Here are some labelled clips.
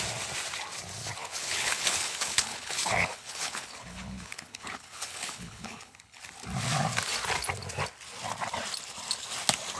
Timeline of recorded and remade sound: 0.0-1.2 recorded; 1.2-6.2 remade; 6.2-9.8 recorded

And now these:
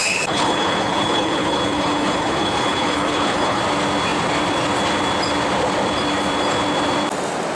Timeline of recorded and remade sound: 0.0-3.6 remade; 3.6-7.5 recorded

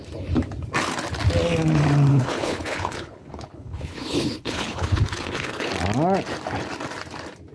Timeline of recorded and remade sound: 0.0-2.1 recorded; 2.1-5.7 remade; 5.7-7.5 recorded

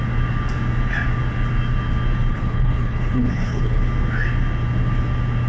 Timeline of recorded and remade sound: 0.0-2.3 recorded; 2.3-3.8 remade; 3.8-5.5 recorded